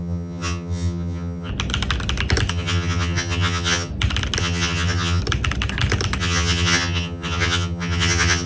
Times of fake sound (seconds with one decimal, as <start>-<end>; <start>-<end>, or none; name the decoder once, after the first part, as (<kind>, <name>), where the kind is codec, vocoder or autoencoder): 0.0-1.5 (vocoder, HiFi-GAN); 2.5-3.9; 4.4-5.2; 6.2-8.5

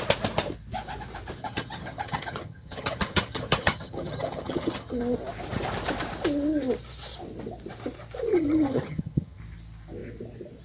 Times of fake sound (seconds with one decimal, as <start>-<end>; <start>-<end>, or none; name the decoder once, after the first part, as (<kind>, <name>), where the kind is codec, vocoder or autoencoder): 1.4-5.0 (vocoder, HiFi-GAN); 8.3-9.4

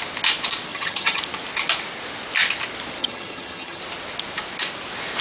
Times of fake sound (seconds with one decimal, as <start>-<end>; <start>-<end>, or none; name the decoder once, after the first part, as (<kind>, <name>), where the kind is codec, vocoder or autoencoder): 0.7-1.2 (vocoder, HiFi-GAN); 3.0-3.8

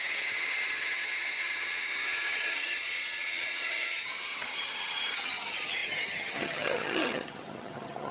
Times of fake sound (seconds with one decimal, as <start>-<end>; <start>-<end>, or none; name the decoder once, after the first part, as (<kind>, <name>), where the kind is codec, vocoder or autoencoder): 0.0-8.1 (vocoder, HiFi-GAN)

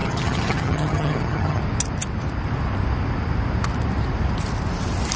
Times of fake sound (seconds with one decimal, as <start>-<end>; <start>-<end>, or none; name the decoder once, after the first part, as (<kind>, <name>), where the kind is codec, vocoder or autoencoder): 0.0-1.6 (vocoder, HiFi-GAN)

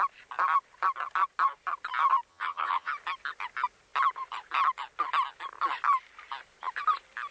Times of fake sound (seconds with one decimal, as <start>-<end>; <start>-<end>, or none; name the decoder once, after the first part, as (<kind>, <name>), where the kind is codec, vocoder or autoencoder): 2.3-2.9 (vocoder, HiFi-GAN)